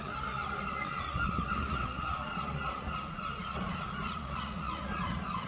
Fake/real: fake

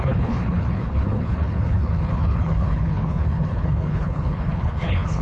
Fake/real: fake